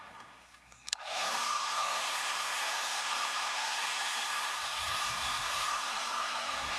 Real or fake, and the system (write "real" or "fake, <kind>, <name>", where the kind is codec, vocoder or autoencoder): fake, codec, SNAC